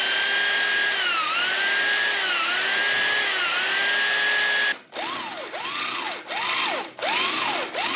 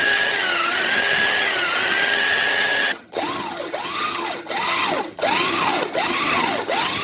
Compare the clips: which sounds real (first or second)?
first